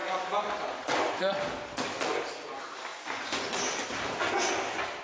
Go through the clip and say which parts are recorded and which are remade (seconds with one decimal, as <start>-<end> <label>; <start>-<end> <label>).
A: 0.0-2.9 recorded; 2.9-3.5 remade; 3.5-5.0 recorded